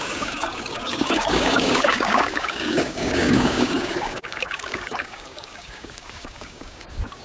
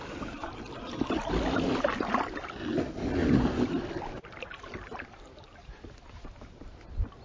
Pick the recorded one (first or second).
second